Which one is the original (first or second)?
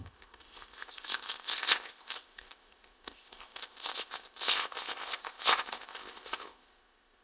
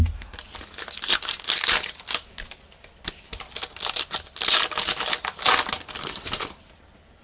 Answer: second